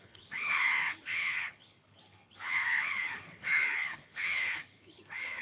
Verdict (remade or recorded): remade